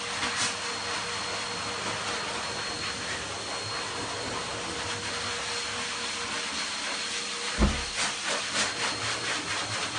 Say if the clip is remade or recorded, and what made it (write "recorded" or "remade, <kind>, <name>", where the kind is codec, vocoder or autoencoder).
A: recorded